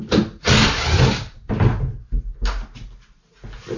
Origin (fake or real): real